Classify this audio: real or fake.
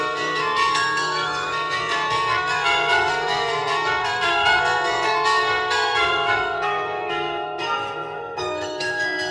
fake